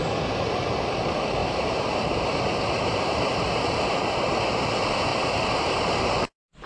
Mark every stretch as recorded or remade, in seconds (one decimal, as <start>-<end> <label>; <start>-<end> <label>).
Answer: 0.0-1.4 recorded; 1.4-4.5 remade; 4.5-5.1 recorded; 5.1-6.7 remade